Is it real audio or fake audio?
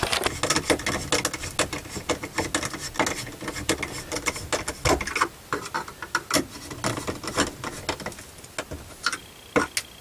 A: real